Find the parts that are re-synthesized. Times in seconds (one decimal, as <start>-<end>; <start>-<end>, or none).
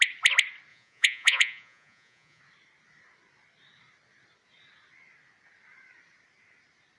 0.7-2.4